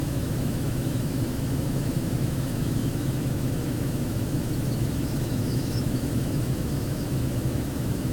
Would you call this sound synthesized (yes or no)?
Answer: yes